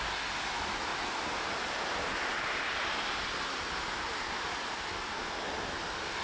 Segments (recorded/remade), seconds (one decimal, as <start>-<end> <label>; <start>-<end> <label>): 0.0-6.2 recorded